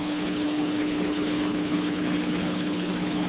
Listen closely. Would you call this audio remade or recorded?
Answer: remade